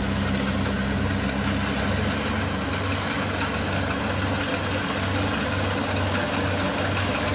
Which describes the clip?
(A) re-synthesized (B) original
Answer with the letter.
B